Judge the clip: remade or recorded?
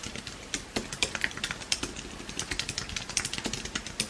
recorded